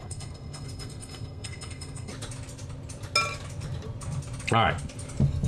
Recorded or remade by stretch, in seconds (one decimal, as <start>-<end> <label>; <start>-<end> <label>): 0.0-2.1 remade; 2.1-5.5 recorded